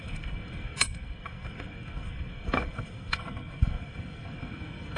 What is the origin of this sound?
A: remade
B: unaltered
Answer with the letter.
A